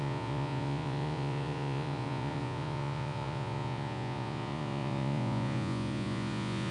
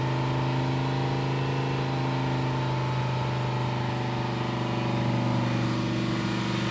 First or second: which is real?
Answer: second